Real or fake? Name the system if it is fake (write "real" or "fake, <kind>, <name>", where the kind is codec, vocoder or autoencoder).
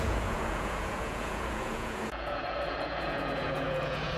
fake, vocoder, Vocos